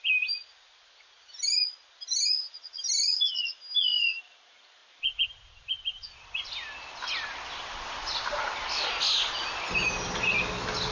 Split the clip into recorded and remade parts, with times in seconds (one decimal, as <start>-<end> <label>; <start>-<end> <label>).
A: 0.0-10.9 recorded